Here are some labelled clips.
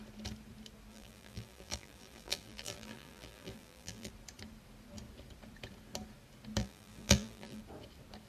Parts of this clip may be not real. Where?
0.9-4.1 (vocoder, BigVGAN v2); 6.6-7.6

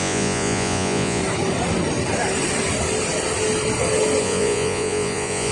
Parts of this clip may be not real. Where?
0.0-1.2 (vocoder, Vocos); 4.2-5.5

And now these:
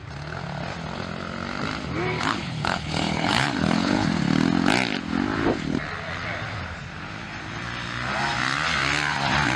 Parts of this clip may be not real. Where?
2.2-4.1 (codec, HILCodec)

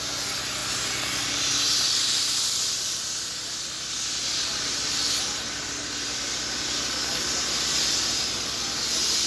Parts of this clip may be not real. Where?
none

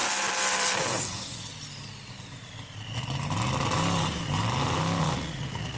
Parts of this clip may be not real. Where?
1.0-1.5 (vocoder, Vocos); 5.0-5.8

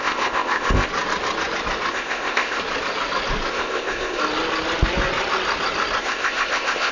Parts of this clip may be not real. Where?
0.0-0.9 (codec, ZipCodec); 1.9-2.6; 3.5-4.2; 6.0-6.9

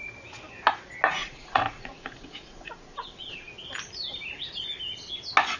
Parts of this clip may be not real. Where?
1.2-3.5 (vocoder, Vocos)